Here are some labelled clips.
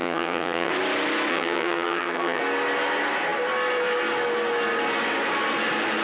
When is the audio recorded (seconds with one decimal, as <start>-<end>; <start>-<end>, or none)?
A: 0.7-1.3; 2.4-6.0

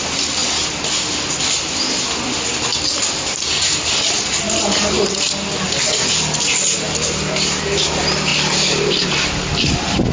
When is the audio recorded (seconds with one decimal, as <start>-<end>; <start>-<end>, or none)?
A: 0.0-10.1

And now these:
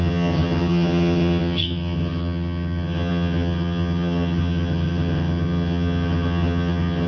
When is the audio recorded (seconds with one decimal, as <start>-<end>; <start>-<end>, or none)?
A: none